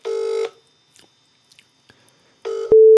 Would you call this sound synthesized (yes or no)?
no